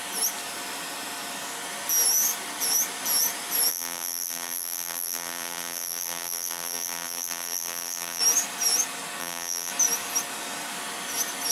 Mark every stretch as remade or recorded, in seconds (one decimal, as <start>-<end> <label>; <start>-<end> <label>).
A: 0.0-3.7 recorded; 3.7-8.2 remade; 8.2-9.2 recorded; 9.2-9.7 remade; 9.7-11.5 recorded